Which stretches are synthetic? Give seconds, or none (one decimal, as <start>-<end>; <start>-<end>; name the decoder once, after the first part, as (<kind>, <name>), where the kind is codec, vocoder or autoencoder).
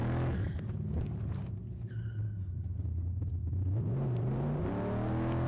3.4-4.7 (vocoder, BigVGAN v2)